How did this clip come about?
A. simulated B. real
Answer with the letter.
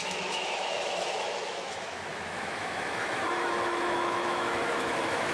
A